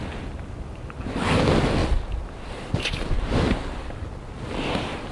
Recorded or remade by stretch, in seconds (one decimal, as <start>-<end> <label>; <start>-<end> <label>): 0.0-5.1 recorded